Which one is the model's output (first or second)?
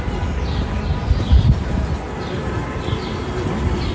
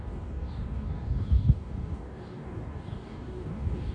second